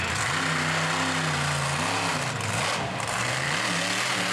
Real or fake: real